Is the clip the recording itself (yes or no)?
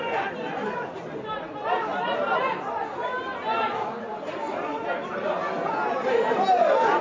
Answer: yes